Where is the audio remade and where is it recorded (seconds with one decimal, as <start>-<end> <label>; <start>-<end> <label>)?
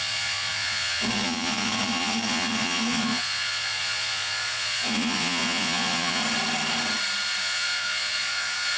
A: 0.0-6.2 remade; 6.2-7.4 recorded; 7.4-8.8 remade